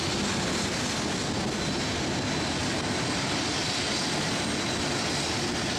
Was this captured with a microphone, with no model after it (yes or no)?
yes